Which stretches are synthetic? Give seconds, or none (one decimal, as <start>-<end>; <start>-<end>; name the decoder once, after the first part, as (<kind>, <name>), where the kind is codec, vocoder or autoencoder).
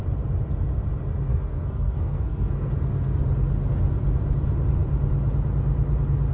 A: 1.3-2.7 (codec, SNAC)